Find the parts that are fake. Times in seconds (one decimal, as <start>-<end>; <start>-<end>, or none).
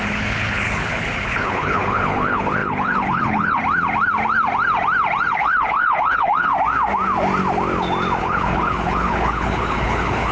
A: 0.0-3.6; 5.3-6.5; 8.2-10.3